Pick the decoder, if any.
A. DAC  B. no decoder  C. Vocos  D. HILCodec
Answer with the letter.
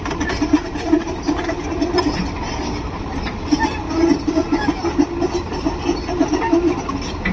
B